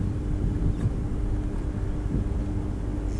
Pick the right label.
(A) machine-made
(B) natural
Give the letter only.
B